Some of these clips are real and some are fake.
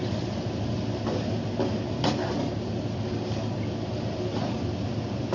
real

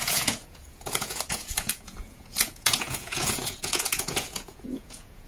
fake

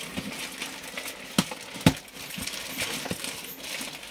real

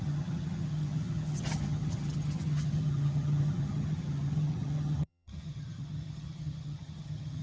fake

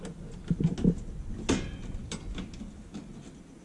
real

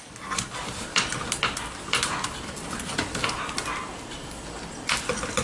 real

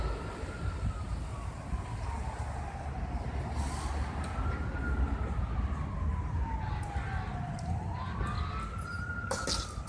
real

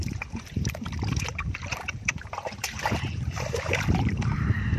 fake